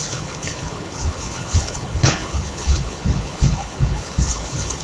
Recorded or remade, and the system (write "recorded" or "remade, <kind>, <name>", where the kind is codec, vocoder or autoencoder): remade, codec, HILCodec